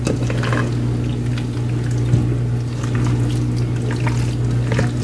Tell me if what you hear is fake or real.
real